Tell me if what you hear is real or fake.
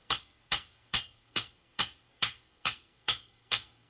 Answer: fake